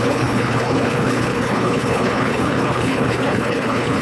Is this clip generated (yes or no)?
yes